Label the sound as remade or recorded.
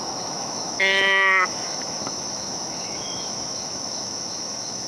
remade